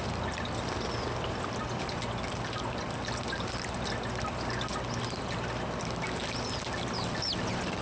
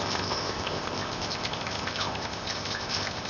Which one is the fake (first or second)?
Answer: second